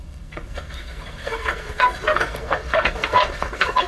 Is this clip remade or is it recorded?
remade